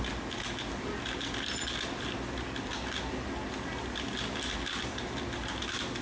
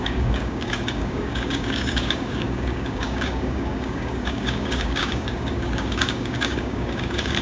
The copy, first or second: second